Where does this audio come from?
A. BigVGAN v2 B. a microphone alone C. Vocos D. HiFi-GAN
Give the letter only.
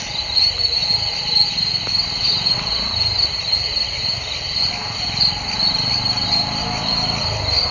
B